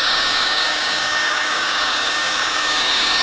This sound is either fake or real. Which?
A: fake